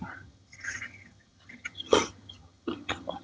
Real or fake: fake